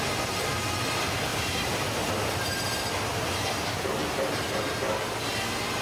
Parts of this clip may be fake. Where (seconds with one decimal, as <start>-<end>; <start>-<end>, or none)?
1.3-2.1